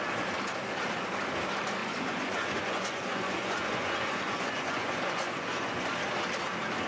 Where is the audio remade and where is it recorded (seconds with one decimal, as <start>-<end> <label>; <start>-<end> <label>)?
0.0-1.8 recorded; 1.8-5.9 remade; 5.9-6.9 recorded